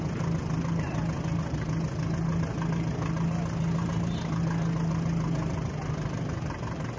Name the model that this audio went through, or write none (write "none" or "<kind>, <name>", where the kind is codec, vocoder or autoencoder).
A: none